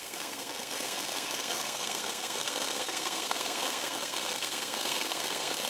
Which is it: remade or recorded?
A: remade